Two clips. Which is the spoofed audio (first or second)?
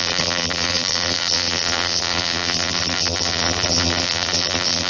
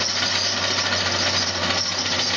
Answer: first